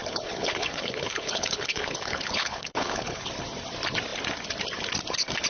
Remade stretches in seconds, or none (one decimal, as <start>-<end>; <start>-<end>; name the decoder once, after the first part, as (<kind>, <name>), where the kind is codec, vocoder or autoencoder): 0.0-3.3 (codec, HILCodec)